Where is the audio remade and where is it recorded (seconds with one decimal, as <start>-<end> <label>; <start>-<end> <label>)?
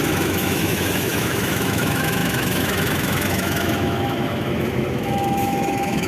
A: 0.0-6.1 remade